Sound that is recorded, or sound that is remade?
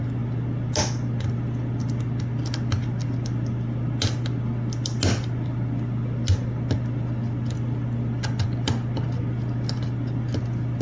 recorded